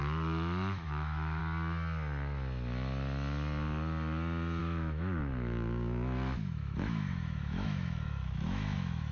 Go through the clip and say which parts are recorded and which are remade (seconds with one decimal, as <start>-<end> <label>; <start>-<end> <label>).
0.0-1.4 remade; 1.4-4.6 recorded; 4.6-9.1 remade